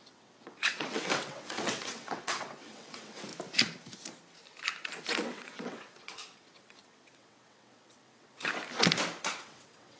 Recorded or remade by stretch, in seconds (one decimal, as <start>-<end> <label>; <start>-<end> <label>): 0.0-3.3 remade; 3.3-5.0 recorded; 5.0-8.5 remade; 8.5-9.2 recorded; 9.2-10.0 remade